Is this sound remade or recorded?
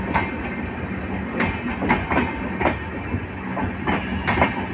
recorded